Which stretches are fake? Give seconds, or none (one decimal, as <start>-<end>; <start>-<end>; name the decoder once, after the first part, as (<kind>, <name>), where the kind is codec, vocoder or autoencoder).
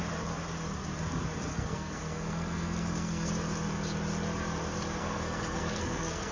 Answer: 1.5-3.3 (codec, SNAC); 5.0-6.3